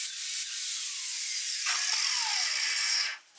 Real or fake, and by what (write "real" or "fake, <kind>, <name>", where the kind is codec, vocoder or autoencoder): real